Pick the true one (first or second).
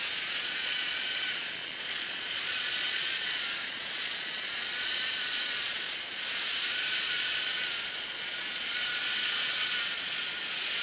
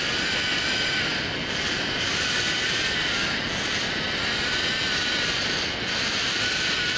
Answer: second